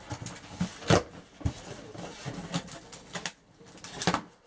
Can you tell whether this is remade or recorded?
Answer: recorded